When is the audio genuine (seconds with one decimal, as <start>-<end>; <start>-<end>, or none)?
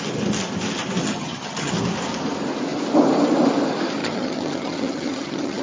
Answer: 0.0-1.0; 1.7-4.0